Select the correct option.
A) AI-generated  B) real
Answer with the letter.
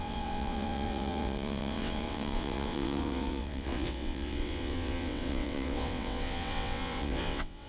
A